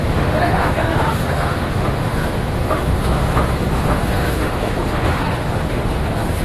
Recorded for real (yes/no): no